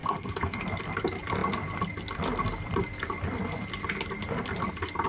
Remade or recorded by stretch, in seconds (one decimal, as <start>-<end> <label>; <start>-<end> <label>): 0.0-0.6 remade; 0.6-5.1 recorded